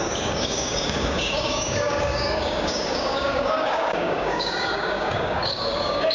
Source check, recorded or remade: remade